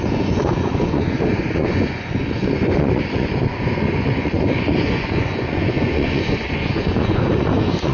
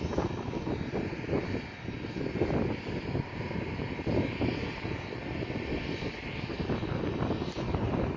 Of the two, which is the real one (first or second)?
second